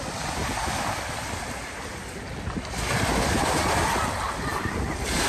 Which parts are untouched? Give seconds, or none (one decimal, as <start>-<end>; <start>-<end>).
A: 0.0-5.3